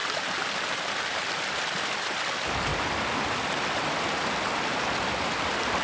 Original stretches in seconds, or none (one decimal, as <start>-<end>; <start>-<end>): 0.0-5.8